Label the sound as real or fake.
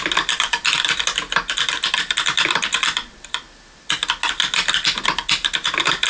real